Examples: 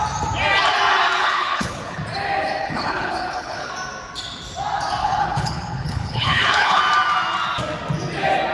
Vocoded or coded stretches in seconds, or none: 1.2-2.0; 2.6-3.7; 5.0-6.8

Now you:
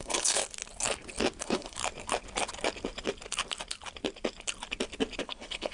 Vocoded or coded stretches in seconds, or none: 0.0-0.4; 1.4-1.8; 5.2-5.7

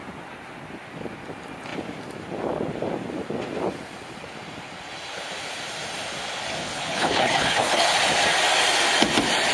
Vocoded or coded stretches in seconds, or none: 6.6-8.0

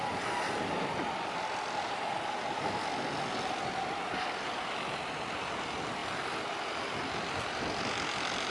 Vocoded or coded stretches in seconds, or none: none

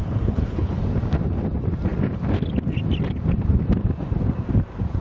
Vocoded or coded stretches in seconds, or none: 0.0-0.7

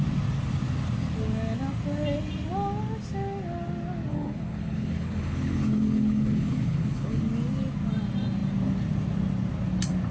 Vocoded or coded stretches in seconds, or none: 4.1-7.2

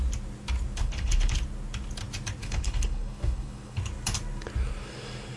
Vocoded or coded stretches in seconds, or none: 0.8-1.4; 2.4-3.8